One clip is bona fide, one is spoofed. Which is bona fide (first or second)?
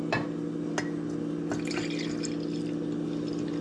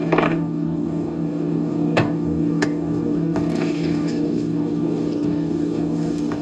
first